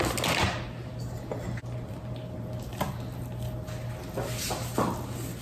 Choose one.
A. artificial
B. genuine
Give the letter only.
B